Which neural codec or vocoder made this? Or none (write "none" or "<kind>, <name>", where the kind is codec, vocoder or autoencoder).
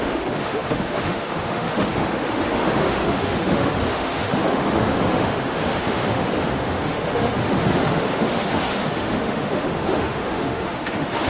autoencoder, DAC-VAE